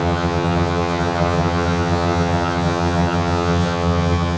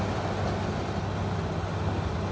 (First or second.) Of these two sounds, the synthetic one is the first